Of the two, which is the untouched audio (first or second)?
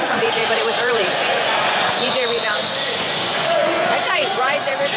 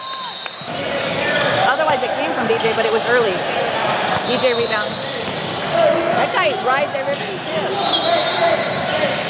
second